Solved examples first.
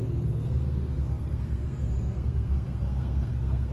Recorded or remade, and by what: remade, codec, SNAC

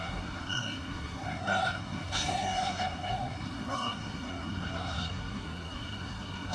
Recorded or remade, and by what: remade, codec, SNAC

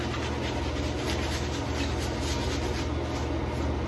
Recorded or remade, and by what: recorded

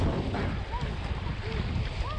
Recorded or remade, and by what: recorded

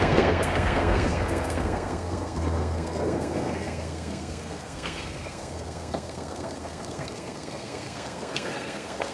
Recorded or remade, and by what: remade, codec, SNAC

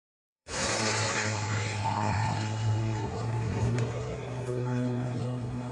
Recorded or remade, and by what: remade, codec, SNAC